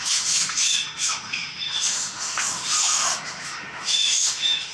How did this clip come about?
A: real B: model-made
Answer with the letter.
B